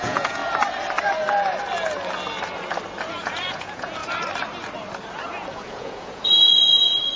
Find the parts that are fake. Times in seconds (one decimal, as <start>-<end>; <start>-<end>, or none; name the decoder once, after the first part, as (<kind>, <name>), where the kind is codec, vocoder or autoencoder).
0.0-0.4 (vocoder, Vocos); 3.1-4.0; 5.2-7.2